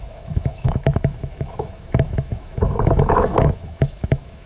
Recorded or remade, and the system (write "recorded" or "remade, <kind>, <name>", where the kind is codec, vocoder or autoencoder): remade, autoencoder, DAC-VAE